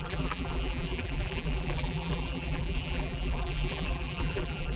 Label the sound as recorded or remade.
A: remade